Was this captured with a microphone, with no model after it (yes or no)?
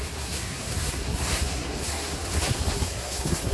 no